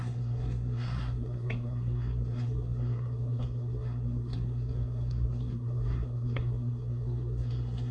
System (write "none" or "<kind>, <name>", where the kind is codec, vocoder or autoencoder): codec, SNAC